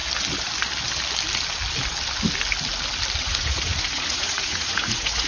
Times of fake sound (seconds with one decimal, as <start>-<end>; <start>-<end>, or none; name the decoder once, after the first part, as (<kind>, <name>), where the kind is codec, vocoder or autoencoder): 3.2-5.3 (vocoder, Vocos)

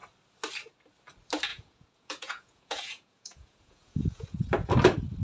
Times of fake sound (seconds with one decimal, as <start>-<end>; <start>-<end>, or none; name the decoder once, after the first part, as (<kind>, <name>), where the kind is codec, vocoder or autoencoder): 1.5-4.4 (vocoder, Vocos)

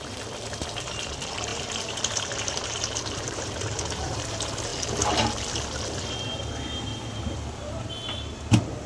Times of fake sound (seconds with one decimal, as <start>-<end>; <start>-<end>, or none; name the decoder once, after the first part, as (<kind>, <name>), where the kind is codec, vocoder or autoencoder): 1.5-4.2 (vocoder, BigVGAN v2)